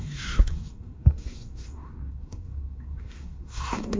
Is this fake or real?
fake